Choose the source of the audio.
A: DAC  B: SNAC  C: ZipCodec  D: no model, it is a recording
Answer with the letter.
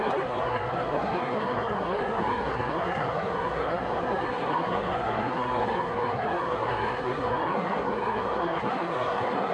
B